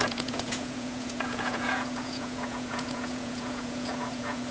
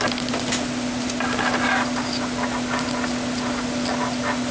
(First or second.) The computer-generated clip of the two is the first